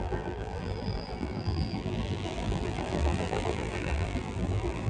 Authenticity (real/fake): fake